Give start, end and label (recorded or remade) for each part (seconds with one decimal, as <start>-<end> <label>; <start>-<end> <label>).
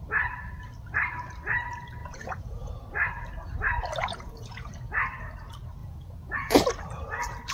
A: 0.0-2.0 recorded; 2.0-2.7 remade; 2.7-4.0 recorded; 4.0-4.7 remade; 4.7-5.8 recorded; 5.8-6.7 remade; 6.7-7.5 recorded